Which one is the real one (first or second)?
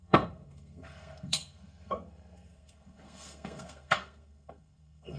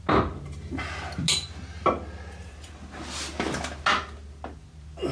second